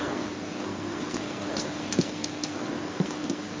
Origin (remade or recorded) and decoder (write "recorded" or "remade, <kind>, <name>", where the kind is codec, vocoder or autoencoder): remade, codec, SNAC